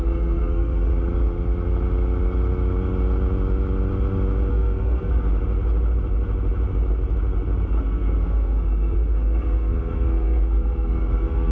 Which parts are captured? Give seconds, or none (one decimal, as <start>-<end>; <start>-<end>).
0.9-4.5; 5.3-7.8